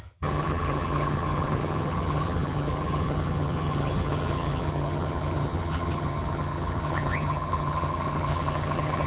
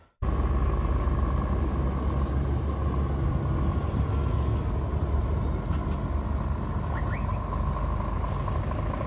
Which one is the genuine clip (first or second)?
second